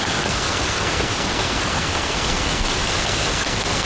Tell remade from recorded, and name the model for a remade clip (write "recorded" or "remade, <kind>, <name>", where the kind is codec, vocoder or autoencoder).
remade, codec, SNAC